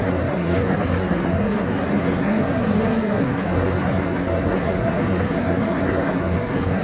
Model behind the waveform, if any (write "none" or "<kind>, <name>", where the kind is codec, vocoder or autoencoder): codec, SNAC